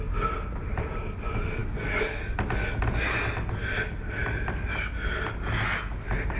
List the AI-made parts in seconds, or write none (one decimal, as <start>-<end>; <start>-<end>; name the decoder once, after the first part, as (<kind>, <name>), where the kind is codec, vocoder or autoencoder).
none